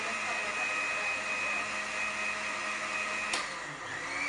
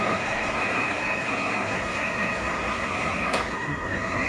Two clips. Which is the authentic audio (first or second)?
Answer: first